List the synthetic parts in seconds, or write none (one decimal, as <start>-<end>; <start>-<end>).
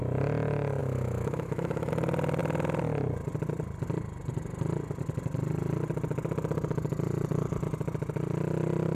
0.8-1.9